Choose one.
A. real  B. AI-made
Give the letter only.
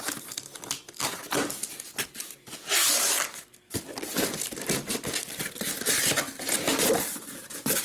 A